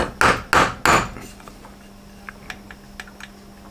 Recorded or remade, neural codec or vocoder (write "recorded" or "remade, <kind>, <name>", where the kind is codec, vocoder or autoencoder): recorded